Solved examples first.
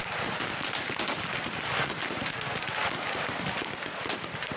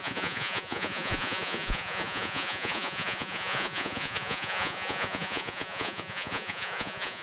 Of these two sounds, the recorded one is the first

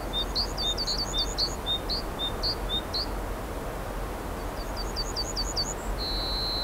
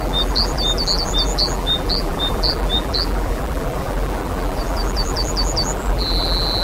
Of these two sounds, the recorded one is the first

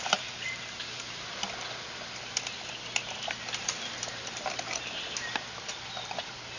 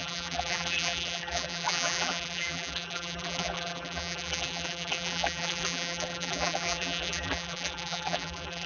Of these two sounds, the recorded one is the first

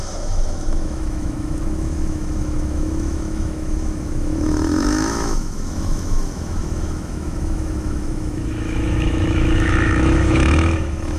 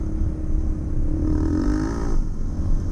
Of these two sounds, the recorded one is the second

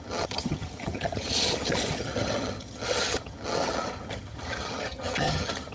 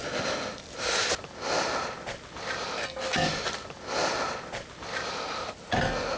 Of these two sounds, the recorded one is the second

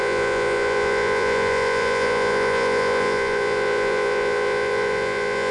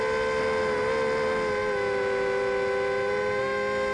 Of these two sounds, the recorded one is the second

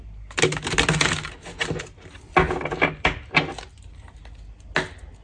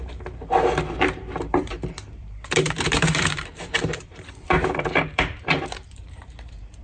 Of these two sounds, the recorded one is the first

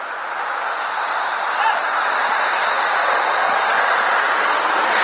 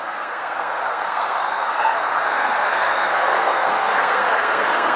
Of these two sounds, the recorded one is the first